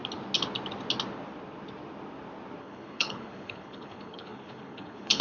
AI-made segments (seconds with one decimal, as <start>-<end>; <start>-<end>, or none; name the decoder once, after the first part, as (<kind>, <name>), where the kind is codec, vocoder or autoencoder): 2.6-5.2 (codec, HILCodec)